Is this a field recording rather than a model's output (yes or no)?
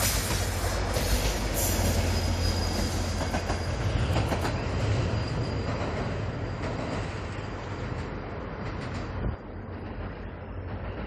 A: yes